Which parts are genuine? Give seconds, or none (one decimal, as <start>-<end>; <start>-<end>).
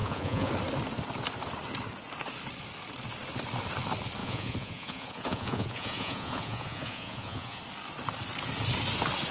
0.5-4.2; 7.6-9.3